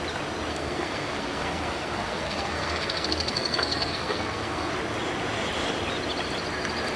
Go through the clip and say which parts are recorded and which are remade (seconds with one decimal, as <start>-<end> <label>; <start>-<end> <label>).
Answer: 0.0-0.5 recorded; 0.5-4.7 remade; 4.7-7.0 recorded